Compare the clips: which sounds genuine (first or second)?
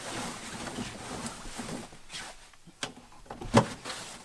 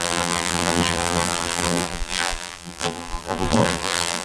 first